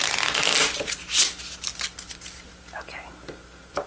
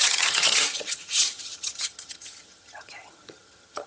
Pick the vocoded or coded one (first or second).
second